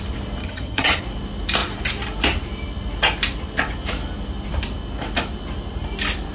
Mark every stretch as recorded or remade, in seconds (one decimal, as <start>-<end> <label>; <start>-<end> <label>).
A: 0.0-0.4 recorded; 0.4-1.0 remade; 1.0-6.3 recorded